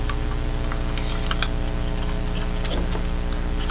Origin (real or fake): real